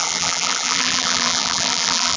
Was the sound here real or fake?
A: fake